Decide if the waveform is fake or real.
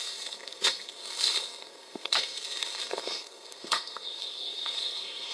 fake